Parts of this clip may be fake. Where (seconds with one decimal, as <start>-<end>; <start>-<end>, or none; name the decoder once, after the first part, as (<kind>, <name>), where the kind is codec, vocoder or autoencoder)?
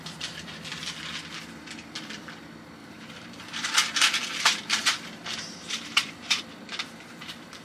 2.8-6.4 (vocoder, BigVGAN v2)